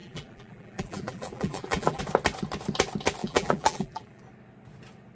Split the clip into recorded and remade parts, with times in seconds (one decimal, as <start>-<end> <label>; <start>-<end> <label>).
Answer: 0.0-2.0 remade; 2.0-3.2 recorded; 3.2-4.2 remade; 4.2-5.2 recorded